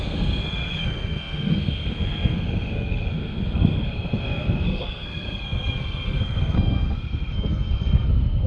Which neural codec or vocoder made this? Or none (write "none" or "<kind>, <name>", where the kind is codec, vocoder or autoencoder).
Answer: codec, SNAC